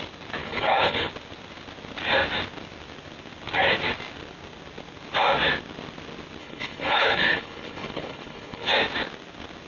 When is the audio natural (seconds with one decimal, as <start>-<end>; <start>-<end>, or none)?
0.0-0.4; 1.1-6.4; 8.7-9.7